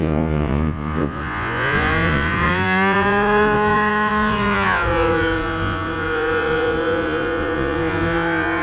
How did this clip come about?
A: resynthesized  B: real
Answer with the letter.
A